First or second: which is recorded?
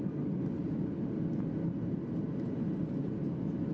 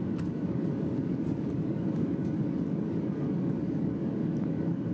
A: first